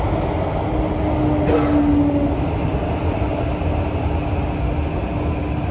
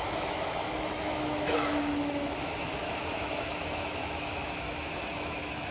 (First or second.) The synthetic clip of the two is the second